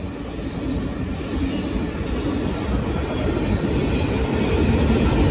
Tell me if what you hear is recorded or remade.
recorded